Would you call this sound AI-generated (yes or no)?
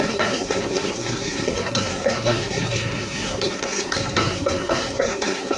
yes